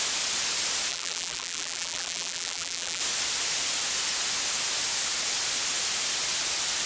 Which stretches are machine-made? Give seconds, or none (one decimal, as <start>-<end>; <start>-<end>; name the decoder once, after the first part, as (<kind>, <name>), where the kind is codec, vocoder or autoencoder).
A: 0.9-3.0 (vocoder, BigVGAN v2)